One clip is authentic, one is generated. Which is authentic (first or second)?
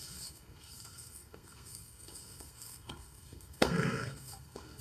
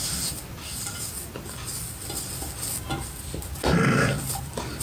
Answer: second